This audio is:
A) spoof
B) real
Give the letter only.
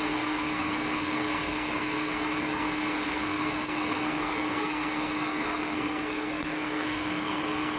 A